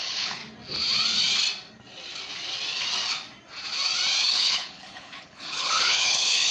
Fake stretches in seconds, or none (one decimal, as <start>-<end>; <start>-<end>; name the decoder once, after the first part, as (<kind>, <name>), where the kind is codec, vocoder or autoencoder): 0.0-0.4 (codec, HILCodec); 4.3-6.5